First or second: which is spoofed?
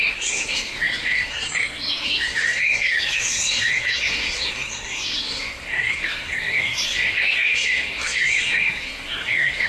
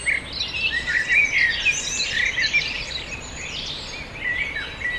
first